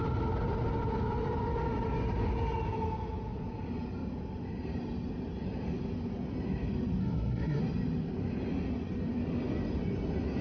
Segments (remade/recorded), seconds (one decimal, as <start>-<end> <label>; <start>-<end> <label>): 0.0-7.0 recorded; 7.0-7.6 remade; 7.6-10.4 recorded